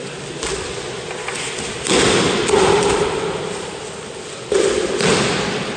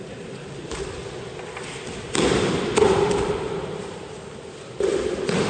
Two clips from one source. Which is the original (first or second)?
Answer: first